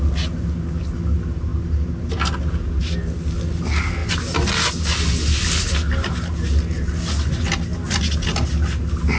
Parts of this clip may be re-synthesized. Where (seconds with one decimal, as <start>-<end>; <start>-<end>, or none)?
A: none